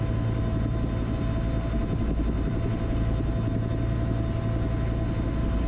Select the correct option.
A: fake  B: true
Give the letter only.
B